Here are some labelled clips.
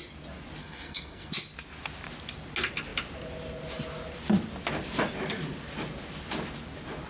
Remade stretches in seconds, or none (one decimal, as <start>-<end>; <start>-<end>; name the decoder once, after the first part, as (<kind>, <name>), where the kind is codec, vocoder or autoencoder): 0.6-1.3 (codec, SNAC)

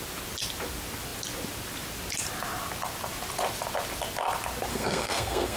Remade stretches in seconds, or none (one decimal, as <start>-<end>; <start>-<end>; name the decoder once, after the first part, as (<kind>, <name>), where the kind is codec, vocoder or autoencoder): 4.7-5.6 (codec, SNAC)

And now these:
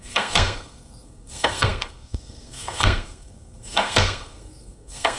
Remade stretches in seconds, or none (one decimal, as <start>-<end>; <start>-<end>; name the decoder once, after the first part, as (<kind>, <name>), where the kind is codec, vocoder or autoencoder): 0.0-5.2 (codec, SNAC)